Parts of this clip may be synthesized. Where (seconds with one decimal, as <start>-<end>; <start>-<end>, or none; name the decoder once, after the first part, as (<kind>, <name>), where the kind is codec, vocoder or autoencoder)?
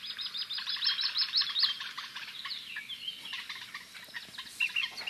0.6-3.7 (vocoder, BigVGAN v2)